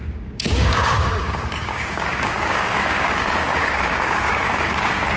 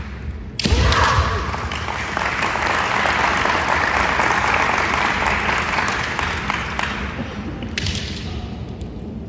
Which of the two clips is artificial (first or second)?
first